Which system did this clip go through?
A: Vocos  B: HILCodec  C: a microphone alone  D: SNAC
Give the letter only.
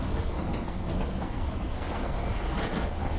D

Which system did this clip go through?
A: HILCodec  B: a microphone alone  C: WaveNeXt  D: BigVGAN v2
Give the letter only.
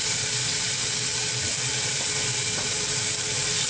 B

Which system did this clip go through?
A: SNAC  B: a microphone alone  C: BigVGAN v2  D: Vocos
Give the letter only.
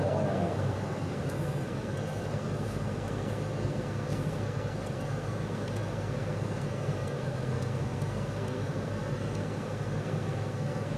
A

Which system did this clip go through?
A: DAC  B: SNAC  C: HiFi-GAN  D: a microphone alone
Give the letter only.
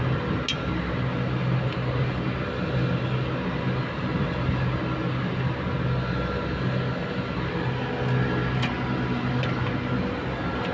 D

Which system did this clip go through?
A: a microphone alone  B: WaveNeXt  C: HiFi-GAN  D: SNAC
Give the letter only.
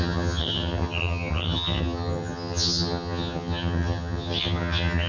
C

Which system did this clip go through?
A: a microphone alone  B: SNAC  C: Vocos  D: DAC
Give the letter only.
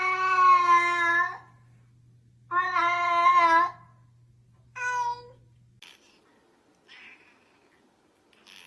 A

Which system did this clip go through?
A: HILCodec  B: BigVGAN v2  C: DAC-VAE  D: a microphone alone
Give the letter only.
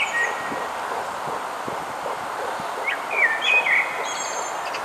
D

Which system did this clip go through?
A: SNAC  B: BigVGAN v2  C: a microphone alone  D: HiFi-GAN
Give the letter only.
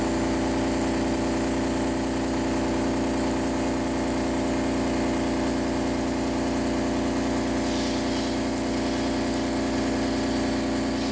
C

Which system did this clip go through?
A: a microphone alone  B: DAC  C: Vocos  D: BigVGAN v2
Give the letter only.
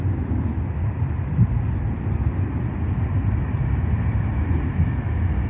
A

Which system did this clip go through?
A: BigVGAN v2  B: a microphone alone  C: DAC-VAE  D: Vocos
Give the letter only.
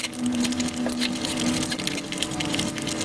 B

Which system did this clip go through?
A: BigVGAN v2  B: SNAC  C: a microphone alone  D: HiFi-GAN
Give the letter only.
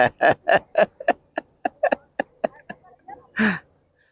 C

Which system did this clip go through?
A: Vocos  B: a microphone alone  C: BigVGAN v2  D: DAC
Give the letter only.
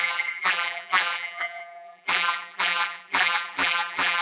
C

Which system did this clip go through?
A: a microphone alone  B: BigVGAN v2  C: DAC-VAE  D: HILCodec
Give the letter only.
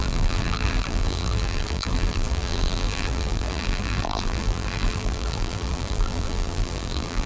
B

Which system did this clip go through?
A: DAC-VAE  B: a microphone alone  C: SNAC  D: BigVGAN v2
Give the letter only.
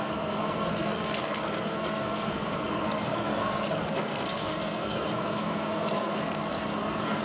C